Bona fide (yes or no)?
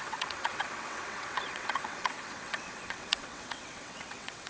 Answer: no